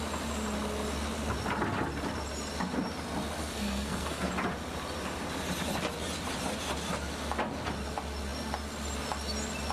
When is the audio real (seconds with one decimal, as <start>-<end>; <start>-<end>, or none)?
0.0-3.4; 4.3-9.7